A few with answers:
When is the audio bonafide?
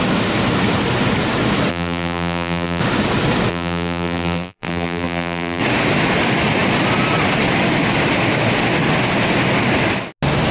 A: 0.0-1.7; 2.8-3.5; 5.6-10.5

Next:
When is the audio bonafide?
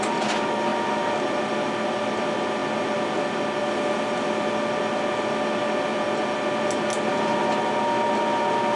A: 0.0-8.8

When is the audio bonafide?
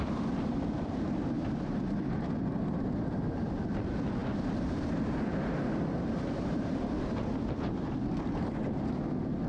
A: none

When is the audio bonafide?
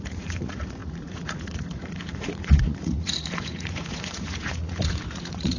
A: none